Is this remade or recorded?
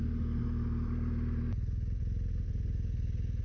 recorded